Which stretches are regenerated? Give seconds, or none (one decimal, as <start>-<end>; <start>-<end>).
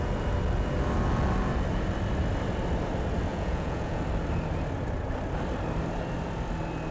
3.3-4.0